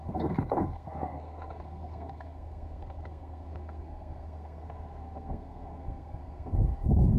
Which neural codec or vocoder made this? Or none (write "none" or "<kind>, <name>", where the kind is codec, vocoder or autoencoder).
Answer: codec, SNAC